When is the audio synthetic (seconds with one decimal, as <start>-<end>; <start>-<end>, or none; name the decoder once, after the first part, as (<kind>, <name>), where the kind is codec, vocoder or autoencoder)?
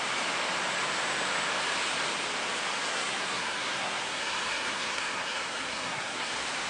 2.9-6.3 (codec, SNAC)